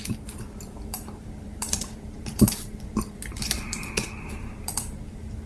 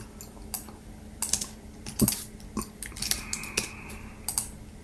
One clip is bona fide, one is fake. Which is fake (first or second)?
first